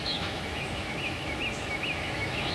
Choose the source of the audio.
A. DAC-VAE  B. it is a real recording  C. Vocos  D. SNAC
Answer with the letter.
A